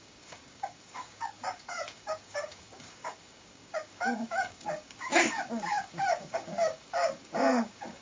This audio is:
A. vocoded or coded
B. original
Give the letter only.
A